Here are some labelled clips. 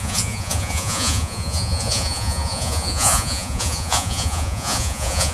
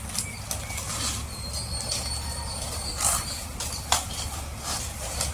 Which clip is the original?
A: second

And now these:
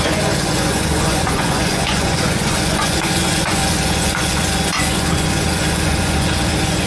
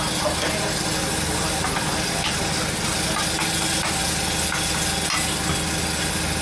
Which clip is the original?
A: second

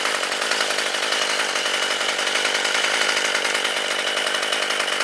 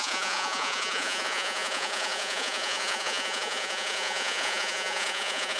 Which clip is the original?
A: first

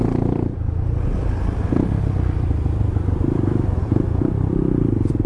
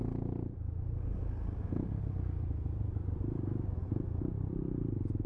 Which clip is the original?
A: second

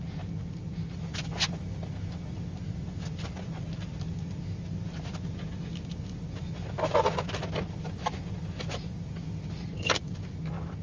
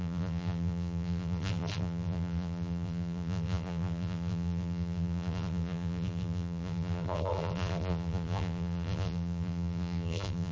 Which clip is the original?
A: first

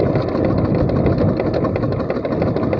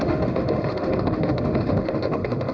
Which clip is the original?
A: first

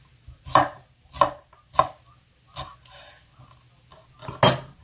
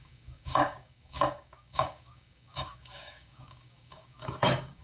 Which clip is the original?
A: first